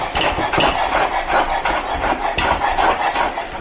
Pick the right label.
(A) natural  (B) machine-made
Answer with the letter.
A